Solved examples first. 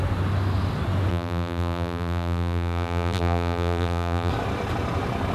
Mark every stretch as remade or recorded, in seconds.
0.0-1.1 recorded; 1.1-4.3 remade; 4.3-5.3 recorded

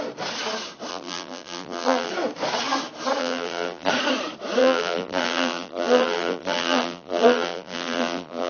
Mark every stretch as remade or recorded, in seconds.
0.0-0.9 recorded; 0.9-2.1 remade; 2.1-3.2 recorded; 3.2-3.9 remade; 3.9-4.6 recorded; 4.6-8.5 remade

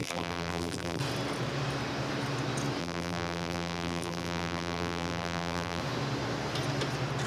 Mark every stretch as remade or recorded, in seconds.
0.0-1.0 remade; 1.0-2.8 recorded; 2.8-5.8 remade; 5.8-7.3 recorded

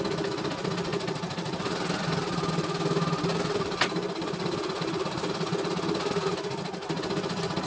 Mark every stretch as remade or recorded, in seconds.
0.0-3.3 recorded; 3.3-5.3 remade; 5.3-7.7 recorded

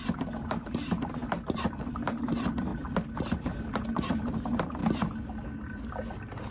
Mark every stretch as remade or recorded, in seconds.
0.0-2.7 remade; 2.7-3.3 recorded; 3.3-4.8 remade; 4.8-6.5 recorded

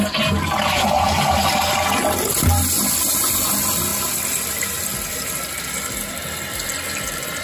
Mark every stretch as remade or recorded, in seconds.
0.0-7.4 recorded